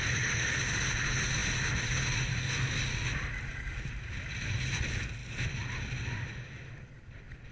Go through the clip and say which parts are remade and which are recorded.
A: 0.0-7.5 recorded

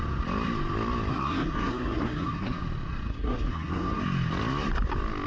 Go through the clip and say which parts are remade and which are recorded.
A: 0.0-1.1 recorded; 1.1-2.6 remade; 2.6-3.1 recorded; 3.1-4.0 remade; 4.0-5.3 recorded

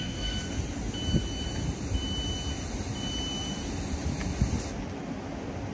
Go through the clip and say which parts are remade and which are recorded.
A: 0.0-0.5 remade; 0.5-5.7 recorded

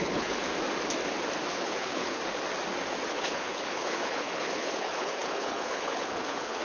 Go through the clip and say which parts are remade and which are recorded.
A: 0.0-0.5 remade; 0.5-1.5 recorded; 1.5-2.2 remade; 2.2-3.1 recorded; 3.1-6.6 remade